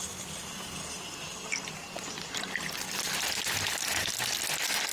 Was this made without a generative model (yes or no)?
yes